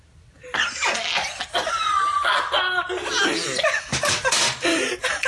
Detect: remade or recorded recorded